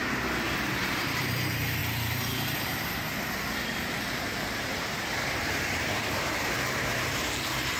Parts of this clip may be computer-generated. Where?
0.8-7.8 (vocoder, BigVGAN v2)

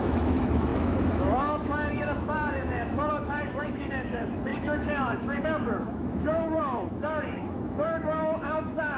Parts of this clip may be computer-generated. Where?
0.0-9.0 (autoencoder, DAC-VAE)

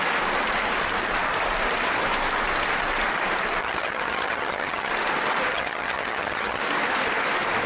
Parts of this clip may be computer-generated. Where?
3.6-4.9 (vocoder, HiFi-GAN); 5.5-6.6

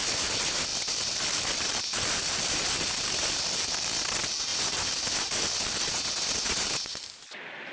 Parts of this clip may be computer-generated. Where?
0.7-3.3 (vocoder, BigVGAN v2); 4.5-5.4

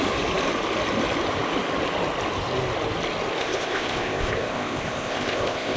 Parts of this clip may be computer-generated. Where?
3.4-5.8 (codec, ZipCodec)